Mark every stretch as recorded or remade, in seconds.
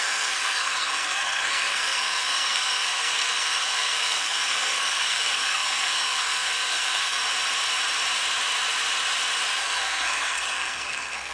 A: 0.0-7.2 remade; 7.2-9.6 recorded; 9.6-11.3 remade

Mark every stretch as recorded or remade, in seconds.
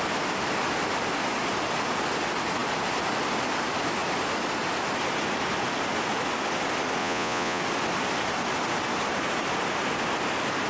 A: 0.0-7.0 recorded; 7.0-7.6 remade; 7.6-10.7 recorded